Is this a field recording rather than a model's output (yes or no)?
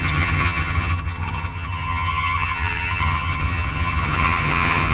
no